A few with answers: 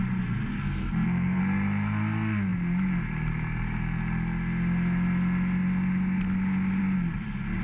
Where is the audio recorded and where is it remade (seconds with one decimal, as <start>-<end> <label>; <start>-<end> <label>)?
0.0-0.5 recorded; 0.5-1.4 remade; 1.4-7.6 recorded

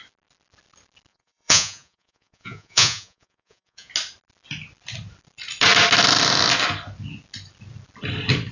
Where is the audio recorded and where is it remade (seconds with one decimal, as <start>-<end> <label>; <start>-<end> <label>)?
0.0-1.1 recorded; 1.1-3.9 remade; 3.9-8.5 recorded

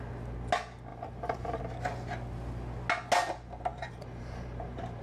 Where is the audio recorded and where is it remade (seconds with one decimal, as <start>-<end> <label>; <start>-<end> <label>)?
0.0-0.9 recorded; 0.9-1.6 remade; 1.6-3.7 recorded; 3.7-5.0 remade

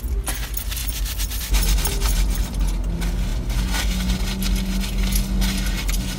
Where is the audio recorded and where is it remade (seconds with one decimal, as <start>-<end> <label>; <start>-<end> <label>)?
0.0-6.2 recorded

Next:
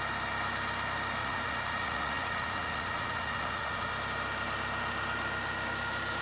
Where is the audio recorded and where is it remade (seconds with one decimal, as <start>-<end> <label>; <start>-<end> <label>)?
0.0-1.2 recorded; 1.2-3.9 remade; 3.9-6.2 recorded

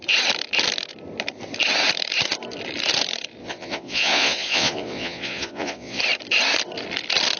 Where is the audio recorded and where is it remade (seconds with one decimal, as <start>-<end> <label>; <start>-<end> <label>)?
0.0-3.4 recorded; 3.4-6.0 remade; 6.0-7.4 recorded